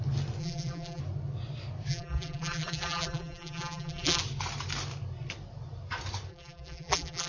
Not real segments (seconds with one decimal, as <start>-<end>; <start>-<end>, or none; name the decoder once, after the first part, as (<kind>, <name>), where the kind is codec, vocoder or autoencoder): 0.4-1.0 (vocoder, BigVGAN v2); 1.9-4.2; 6.3-7.3